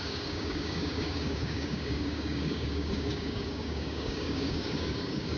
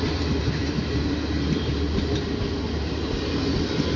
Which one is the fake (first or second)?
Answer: first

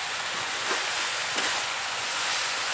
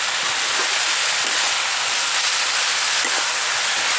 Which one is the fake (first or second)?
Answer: first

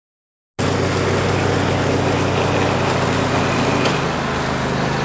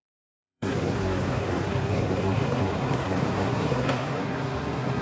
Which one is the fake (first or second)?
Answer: second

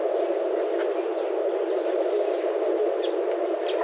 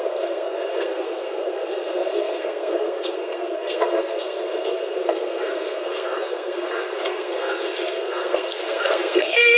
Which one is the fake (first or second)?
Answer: second